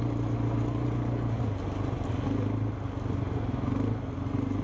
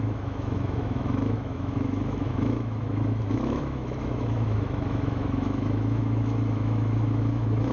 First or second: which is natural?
first